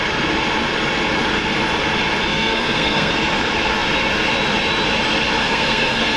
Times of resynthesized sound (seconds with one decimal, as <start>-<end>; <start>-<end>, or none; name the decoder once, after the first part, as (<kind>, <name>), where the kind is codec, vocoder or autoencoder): 2.3-3.1 (codec, SNAC); 5.4-6.2